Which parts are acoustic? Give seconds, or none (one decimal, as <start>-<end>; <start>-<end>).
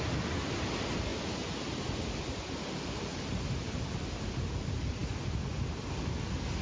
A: 0.0-3.1; 4.0-6.6